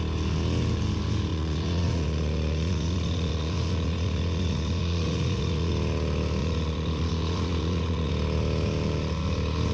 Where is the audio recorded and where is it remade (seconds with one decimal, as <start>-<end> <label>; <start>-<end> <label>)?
0.0-1.3 recorded; 1.3-5.7 remade; 5.7-6.4 recorded; 6.4-8.1 remade; 8.1-9.7 recorded